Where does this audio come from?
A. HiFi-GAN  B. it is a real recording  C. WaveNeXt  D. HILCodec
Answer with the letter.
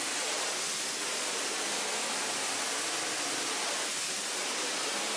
B